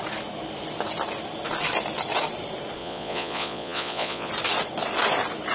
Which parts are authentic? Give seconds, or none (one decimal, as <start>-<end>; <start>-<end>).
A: 0.0-2.8; 4.3-5.5